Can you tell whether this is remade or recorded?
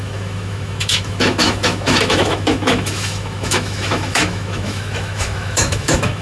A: remade